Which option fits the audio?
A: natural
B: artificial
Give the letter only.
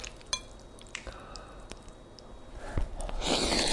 A